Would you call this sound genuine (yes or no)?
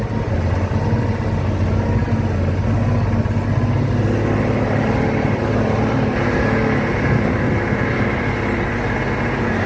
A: yes